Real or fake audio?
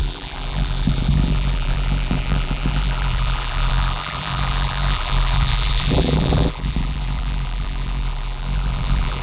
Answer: fake